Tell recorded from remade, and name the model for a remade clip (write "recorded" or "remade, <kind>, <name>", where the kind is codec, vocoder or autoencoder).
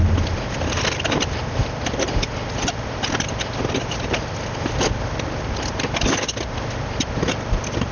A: recorded